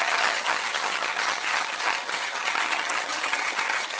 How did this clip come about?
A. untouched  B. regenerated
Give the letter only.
B